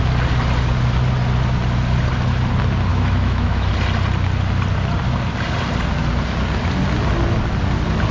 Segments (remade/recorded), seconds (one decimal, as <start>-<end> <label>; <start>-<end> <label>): 0.0-2.9 recorded; 2.9-3.7 remade; 3.7-8.1 recorded